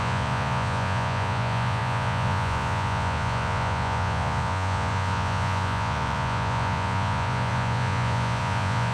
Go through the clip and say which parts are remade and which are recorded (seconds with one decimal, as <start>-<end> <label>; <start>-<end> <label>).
0.0-8.9 remade